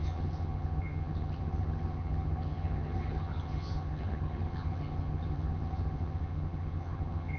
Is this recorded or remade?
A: remade